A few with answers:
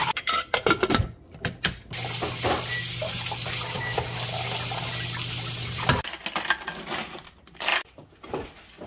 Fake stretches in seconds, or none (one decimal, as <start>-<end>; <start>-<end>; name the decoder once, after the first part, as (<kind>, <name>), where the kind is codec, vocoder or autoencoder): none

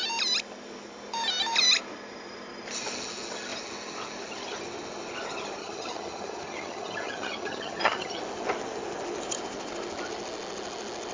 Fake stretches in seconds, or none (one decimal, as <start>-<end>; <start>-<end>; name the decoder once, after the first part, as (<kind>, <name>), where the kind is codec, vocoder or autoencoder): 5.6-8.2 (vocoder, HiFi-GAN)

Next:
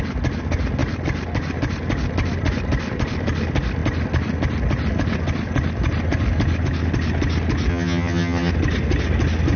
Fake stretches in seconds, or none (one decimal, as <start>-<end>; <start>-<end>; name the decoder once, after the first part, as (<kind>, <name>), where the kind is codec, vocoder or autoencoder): 7.7-8.5 (vocoder, HiFi-GAN)

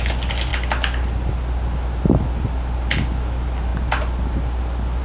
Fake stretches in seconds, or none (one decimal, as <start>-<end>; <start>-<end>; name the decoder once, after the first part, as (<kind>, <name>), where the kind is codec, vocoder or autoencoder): none

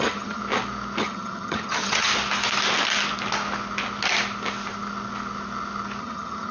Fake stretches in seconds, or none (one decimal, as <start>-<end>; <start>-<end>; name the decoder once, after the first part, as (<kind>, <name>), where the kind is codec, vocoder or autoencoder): 0.0-0.4 (vocoder, HiFi-GAN); 1.0-2.1; 6.0-6.5